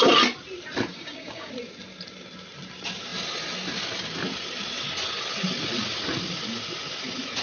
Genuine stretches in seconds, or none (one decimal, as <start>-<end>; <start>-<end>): 0.0-0.9; 1.5-7.4